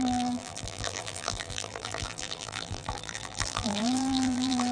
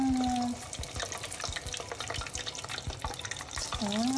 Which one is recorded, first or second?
second